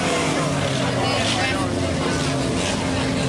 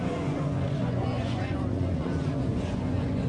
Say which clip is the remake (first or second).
second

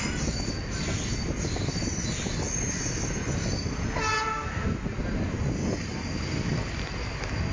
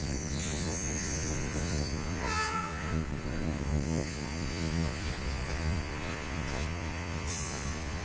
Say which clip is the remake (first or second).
second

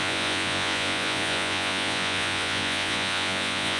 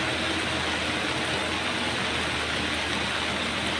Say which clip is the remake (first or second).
first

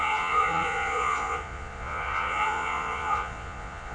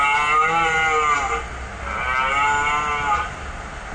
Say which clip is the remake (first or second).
first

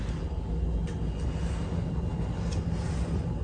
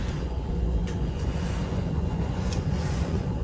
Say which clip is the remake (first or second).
second